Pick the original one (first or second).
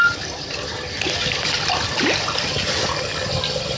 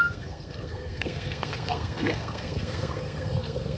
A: first